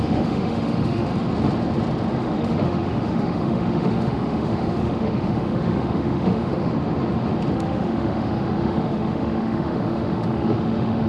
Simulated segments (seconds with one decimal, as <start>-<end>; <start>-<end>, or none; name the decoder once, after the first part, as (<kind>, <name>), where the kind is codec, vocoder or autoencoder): 0.0-1.1 (autoencoder, DAC-VAE); 2.2-6.7; 7.5-11.1